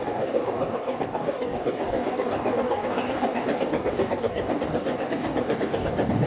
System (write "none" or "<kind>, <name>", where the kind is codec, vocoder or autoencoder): codec, DAC